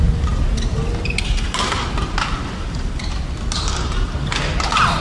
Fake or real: real